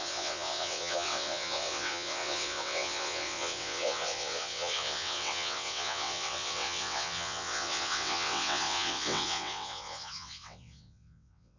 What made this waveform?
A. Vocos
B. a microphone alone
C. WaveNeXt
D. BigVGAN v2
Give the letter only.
C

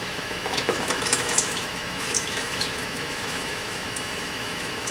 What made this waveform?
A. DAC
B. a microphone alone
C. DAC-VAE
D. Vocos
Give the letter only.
C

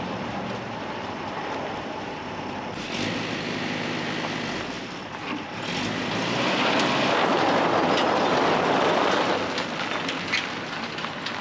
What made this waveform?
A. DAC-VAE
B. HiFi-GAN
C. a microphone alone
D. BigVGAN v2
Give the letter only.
C